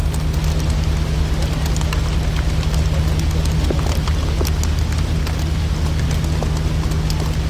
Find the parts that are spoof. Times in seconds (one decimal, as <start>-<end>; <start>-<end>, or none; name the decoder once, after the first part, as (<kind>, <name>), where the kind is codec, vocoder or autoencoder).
none